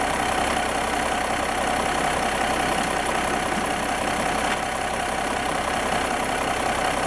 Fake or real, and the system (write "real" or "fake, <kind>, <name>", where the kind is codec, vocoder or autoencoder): real